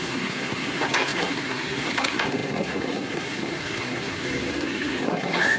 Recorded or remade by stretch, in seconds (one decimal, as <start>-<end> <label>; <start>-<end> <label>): 0.0-5.6 remade

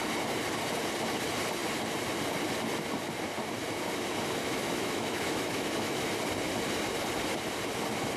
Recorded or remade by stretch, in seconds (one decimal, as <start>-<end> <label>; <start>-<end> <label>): 0.0-4.4 recorded; 4.4-6.1 remade; 6.1-8.2 recorded

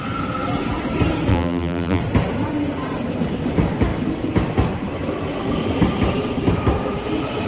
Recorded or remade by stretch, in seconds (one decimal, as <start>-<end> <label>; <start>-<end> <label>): 0.0-1.3 recorded; 1.3-2.0 remade; 2.0-7.5 recorded

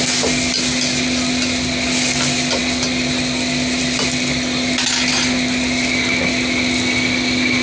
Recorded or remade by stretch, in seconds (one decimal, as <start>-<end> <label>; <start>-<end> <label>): 0.0-7.6 recorded